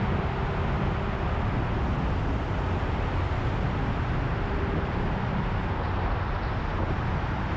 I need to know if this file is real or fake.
real